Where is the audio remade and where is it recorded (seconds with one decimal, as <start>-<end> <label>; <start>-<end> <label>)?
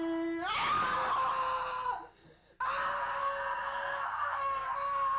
0.0-3.2 recorded; 3.2-4.7 remade; 4.7-5.2 recorded